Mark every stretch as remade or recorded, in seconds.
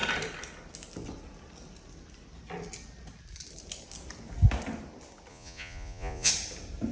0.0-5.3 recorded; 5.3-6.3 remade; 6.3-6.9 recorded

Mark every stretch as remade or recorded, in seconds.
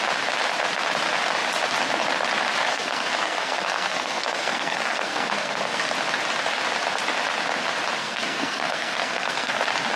0.0-2.7 recorded; 2.7-5.9 remade; 5.9-8.0 recorded; 8.0-9.6 remade; 9.6-10.0 recorded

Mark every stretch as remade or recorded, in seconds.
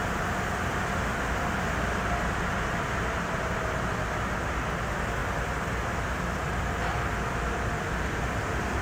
0.0-5.2 recorded; 5.2-8.8 remade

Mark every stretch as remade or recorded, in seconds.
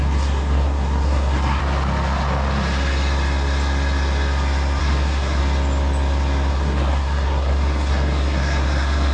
0.0-1.6 remade; 1.6-4.8 recorded; 4.8-5.4 remade; 5.4-6.5 recorded; 6.5-9.1 remade